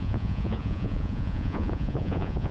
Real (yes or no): no